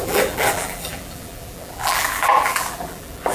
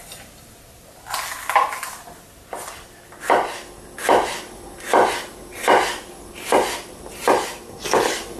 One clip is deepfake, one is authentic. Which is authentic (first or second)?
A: second